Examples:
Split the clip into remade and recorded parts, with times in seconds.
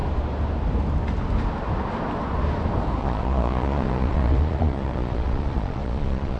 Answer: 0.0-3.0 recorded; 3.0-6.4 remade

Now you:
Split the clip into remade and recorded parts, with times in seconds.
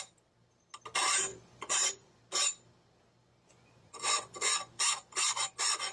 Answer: 0.0-1.3 recorded; 1.3-2.2 remade; 2.2-3.2 recorded; 3.2-5.9 remade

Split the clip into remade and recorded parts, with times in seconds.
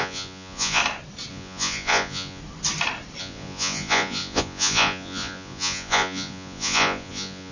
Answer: 0.0-0.8 remade; 0.8-1.3 recorded; 1.3-2.4 remade; 2.4-3.2 recorded; 3.2-7.5 remade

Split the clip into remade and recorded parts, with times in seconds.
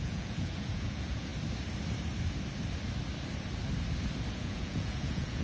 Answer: 0.0-1.3 remade; 1.3-4.3 recorded; 4.3-5.4 remade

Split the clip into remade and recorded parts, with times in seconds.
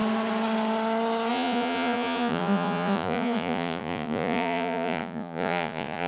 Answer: 0.0-1.3 recorded; 1.3-6.1 remade